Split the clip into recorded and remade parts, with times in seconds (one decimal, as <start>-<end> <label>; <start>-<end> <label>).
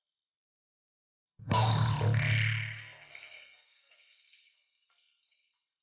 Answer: 0.0-1.7 remade; 1.7-3.1 recorded; 3.1-5.8 remade